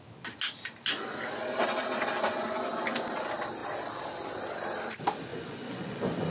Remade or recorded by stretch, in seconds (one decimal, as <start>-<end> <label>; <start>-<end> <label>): 0.0-5.3 recorded; 5.3-6.3 remade